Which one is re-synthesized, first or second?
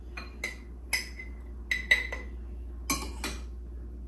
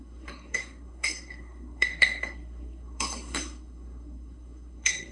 second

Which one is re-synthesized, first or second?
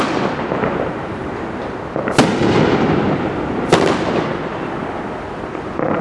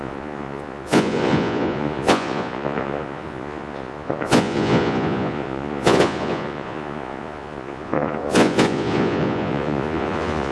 second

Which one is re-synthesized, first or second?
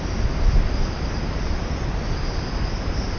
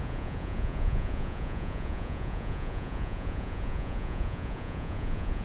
second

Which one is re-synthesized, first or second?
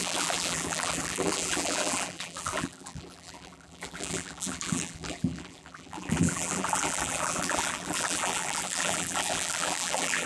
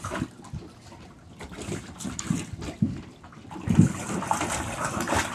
first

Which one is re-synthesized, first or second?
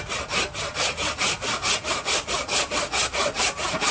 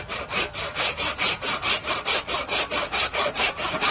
first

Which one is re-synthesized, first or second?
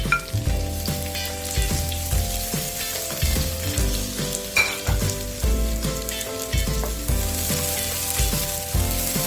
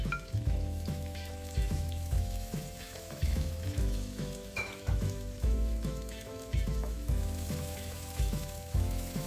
second